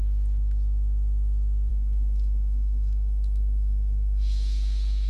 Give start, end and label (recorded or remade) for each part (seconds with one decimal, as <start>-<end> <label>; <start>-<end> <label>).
0.0-1.7 recorded; 1.7-5.1 remade